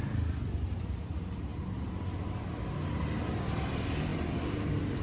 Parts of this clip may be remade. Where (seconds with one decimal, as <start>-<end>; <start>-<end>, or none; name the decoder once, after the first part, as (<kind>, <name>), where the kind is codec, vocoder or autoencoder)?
none